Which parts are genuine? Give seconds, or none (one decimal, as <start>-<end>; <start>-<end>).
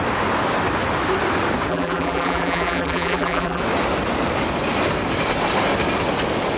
0.0-1.7; 3.6-6.6